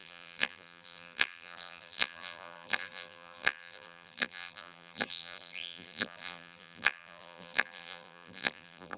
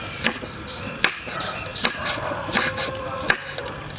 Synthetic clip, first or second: first